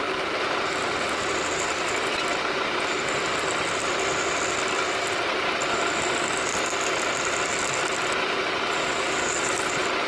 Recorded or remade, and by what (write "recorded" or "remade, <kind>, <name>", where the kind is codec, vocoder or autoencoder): recorded